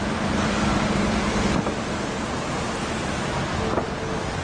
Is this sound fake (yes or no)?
no